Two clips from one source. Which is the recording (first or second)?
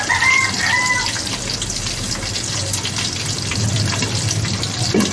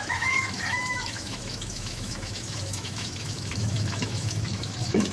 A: first